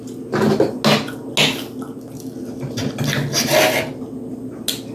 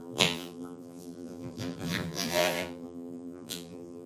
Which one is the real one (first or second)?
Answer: first